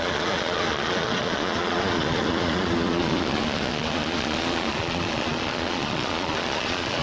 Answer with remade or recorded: remade